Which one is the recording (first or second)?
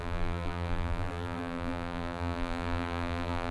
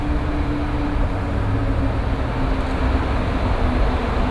second